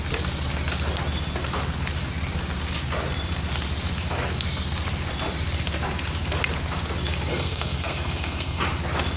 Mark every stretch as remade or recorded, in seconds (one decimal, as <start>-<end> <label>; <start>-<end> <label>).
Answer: 0.0-7.3 recorded; 7.3-8.6 remade; 8.6-9.2 recorded